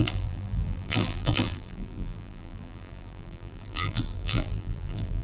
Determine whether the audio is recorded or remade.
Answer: remade